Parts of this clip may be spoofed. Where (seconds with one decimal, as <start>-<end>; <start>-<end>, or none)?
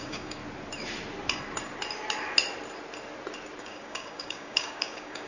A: 0.0-0.4; 3.6-5.3